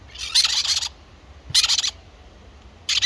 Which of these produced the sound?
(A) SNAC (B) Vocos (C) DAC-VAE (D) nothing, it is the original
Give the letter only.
D